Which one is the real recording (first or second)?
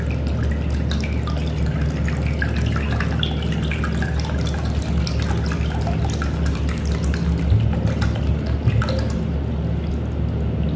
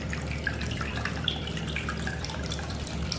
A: first